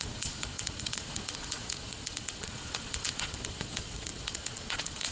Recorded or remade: remade